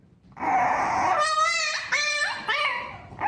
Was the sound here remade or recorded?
recorded